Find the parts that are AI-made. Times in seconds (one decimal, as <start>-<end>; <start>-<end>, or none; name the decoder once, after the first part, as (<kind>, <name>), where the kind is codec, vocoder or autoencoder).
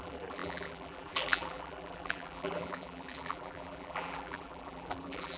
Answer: 0.0-5.4 (vocoder, BigVGAN v2)